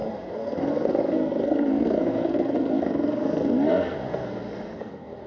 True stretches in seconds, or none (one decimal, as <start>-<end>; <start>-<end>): none